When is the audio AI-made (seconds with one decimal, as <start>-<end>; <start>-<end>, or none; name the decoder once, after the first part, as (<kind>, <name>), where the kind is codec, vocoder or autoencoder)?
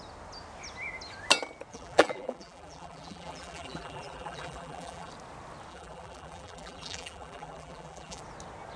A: 1.7-5.1 (vocoder, BigVGAN v2); 5.7-8.2